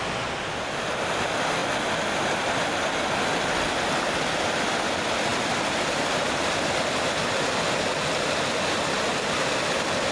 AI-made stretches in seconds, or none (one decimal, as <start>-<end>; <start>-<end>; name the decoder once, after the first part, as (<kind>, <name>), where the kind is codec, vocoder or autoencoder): 5.3-5.9 (vocoder, BigVGAN v2)